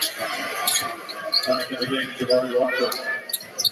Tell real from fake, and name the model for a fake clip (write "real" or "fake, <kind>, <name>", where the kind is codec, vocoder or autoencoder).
fake, vocoder, BigVGAN v2